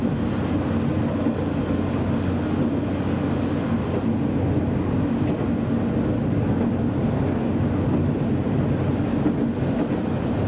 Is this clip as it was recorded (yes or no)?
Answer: yes